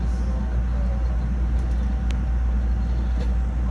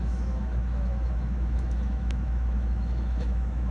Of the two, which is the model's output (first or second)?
second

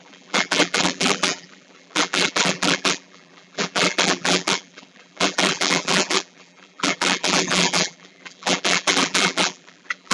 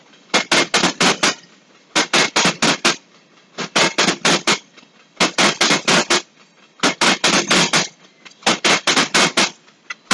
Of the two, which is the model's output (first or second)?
first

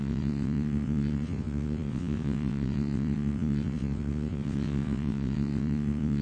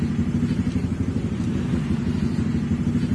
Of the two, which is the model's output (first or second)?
first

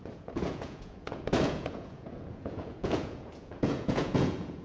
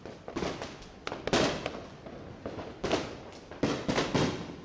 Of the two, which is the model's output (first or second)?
first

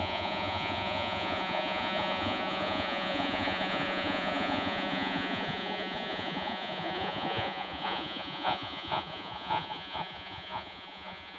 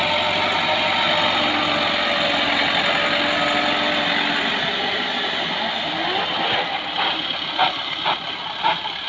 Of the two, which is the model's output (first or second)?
first